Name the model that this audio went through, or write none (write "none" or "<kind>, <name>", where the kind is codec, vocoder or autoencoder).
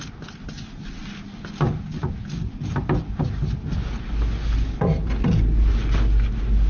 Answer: none